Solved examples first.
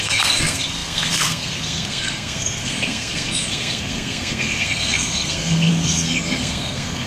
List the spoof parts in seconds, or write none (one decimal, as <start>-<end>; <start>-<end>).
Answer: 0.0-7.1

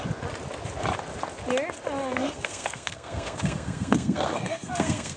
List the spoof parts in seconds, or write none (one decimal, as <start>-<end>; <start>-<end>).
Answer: 2.0-5.2

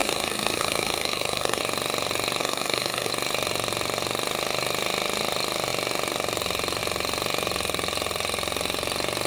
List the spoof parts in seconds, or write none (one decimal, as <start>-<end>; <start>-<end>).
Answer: 0.0-1.6; 2.4-3.1

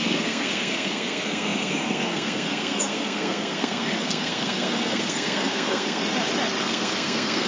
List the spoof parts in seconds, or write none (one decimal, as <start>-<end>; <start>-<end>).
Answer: 0.0-6.0; 6.6-7.5

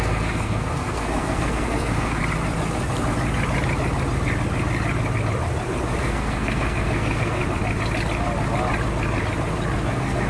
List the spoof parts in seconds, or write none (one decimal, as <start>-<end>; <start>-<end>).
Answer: 0.0-2.2; 6.0-7.4; 9.9-10.3

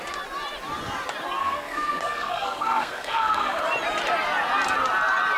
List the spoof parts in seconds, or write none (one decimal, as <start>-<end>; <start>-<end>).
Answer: 1.4-3.6

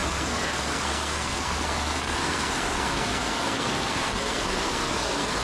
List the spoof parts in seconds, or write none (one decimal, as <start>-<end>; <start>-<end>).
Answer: 0.0-5.4

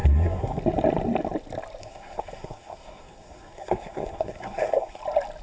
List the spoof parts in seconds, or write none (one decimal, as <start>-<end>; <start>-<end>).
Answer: 0.0-0.6; 1.8-5.0